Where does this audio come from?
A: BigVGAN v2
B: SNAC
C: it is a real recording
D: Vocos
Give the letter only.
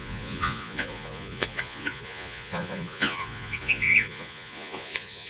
D